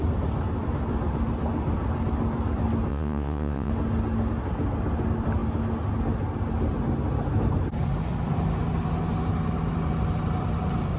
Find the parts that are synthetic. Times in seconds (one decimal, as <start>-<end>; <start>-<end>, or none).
2.9-3.7